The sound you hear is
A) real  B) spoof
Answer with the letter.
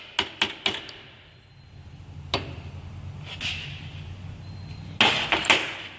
A